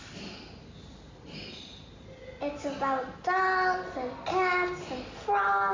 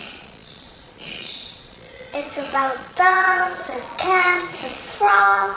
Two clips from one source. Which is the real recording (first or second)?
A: first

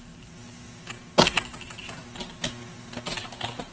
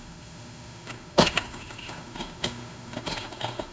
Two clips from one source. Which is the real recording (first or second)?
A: first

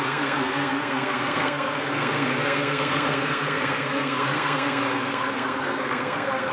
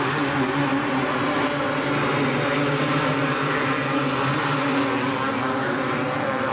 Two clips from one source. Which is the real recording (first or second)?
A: second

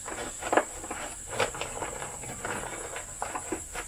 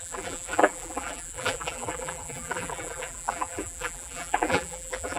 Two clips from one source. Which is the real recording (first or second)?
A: first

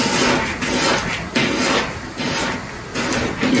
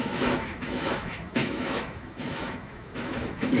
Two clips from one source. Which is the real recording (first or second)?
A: first